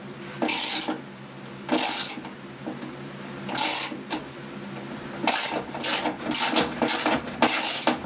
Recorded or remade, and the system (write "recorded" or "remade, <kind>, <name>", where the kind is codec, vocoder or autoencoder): recorded